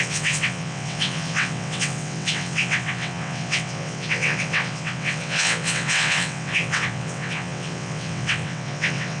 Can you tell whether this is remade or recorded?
remade